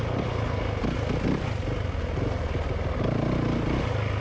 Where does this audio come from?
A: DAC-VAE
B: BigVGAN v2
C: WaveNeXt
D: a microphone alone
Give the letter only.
D